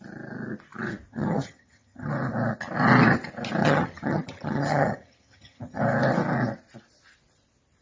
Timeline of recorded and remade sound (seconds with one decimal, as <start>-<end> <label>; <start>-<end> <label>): 0.0-1.1 recorded; 1.1-2.1 remade; 2.1-3.6 recorded; 3.6-5.8 remade; 5.8-7.8 recorded